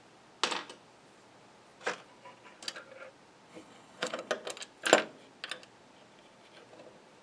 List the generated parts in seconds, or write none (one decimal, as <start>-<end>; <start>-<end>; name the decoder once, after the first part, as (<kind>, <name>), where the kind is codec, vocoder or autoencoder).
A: 3.5-4.3 (codec, HILCodec)